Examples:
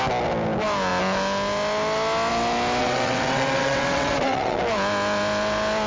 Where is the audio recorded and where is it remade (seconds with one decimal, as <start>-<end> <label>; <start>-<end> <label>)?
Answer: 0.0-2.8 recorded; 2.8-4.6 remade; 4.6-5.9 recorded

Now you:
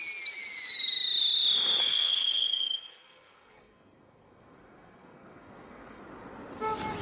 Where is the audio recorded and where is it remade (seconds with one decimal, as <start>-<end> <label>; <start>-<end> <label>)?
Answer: 0.0-1.8 recorded; 1.8-6.0 remade; 6.0-7.0 recorded

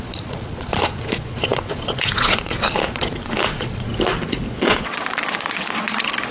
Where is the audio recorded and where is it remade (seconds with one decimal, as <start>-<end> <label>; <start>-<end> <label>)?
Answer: 0.0-3.9 remade; 3.9-4.5 recorded; 4.5-6.3 remade

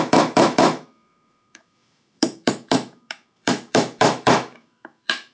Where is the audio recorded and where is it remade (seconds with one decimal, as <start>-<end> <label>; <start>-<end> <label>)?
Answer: 0.0-5.3 remade